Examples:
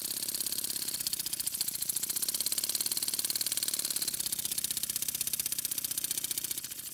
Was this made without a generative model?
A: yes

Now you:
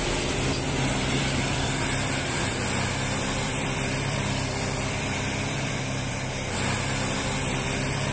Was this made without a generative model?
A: no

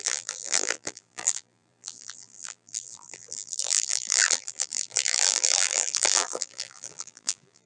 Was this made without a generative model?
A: no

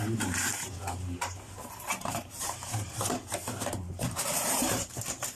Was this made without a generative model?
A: no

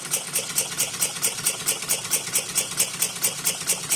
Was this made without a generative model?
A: yes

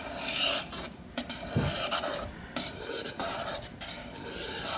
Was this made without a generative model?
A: no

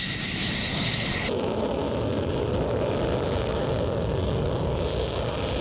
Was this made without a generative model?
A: yes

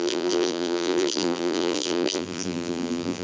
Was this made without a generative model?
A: no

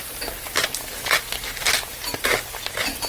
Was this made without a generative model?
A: yes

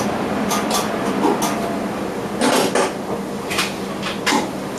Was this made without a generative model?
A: yes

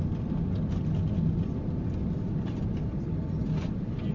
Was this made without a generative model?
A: yes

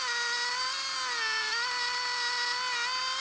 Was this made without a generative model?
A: yes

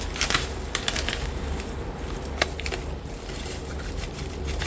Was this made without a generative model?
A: no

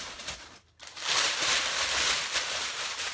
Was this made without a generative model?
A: no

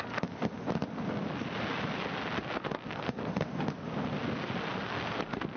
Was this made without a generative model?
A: yes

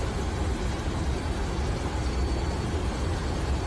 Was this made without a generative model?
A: yes